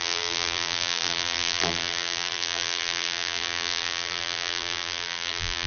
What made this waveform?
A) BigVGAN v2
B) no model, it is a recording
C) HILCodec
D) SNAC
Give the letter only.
A